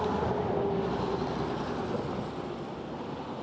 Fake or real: real